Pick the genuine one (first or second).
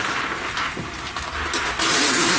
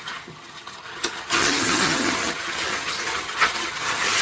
first